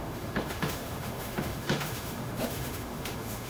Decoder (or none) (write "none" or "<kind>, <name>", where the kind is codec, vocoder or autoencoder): autoencoder, DAC-VAE